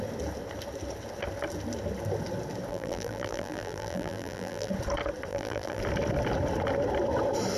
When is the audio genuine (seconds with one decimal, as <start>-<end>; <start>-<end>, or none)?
0.0-2.7; 4.7-5.3; 5.8-7.6